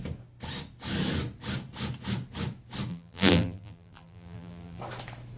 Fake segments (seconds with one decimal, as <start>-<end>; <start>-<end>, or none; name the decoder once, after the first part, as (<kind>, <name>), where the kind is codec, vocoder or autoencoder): 2.9-4.8 (vocoder, BigVGAN v2)